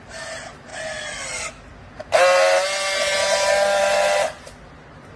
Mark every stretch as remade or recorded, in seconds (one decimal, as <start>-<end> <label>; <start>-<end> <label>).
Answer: 0.0-5.2 recorded